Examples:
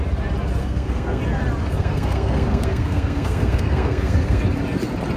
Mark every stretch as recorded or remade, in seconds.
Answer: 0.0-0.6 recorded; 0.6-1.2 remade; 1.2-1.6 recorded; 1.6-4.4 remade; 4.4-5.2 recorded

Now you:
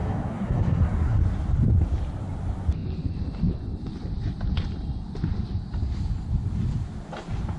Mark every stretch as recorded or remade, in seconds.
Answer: 0.0-1.2 remade; 1.2-7.6 recorded